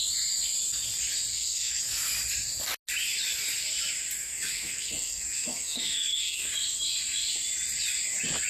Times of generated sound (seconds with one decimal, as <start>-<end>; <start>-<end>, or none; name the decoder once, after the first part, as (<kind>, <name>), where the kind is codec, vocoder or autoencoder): 1.3-1.8 (codec, SNAC); 4.2-6.5